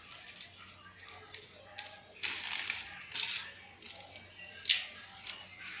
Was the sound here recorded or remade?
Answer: recorded